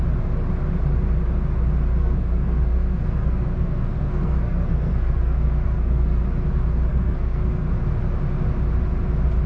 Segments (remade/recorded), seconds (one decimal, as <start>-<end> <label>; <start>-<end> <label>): 0.0-2.0 recorded; 2.0-6.2 remade; 6.2-6.9 recorded; 6.9-7.7 remade; 7.7-9.5 recorded

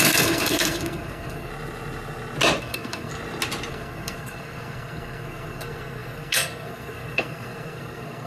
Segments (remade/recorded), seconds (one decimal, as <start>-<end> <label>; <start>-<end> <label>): 0.0-1.5 remade; 1.5-2.6 recorded; 2.6-3.1 remade; 3.1-3.7 recorded; 3.7-8.3 remade

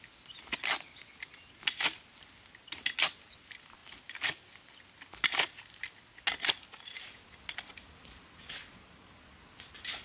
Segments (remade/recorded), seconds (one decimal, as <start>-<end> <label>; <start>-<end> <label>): 0.0-10.0 recorded

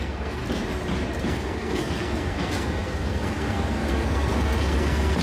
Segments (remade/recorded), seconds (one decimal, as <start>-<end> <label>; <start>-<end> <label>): 0.0-0.4 remade; 0.4-1.2 recorded; 1.2-5.2 remade

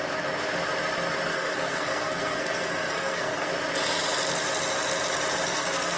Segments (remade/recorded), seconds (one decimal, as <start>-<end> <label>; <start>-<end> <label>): 0.0-1.3 recorded; 1.3-3.5 remade; 3.5-5.5 recorded; 5.5-6.0 remade